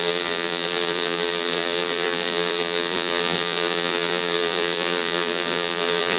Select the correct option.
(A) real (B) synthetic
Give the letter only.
B